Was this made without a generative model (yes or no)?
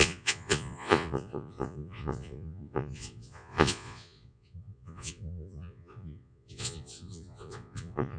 no